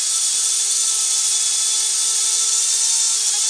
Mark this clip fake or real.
real